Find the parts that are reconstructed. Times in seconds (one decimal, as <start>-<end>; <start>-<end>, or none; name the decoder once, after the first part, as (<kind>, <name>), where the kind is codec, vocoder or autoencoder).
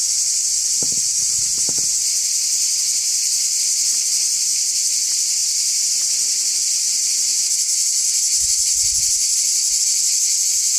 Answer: none